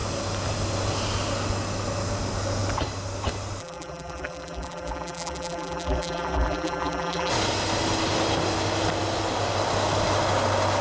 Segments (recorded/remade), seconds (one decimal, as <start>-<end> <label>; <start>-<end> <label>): 0.0-3.6 recorded; 3.6-7.3 remade; 7.3-10.8 recorded